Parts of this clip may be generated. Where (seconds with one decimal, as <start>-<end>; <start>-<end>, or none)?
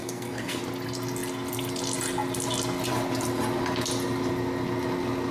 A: 0.0-0.6